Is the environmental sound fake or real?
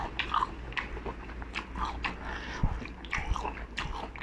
real